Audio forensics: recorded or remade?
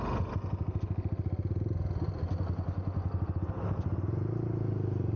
recorded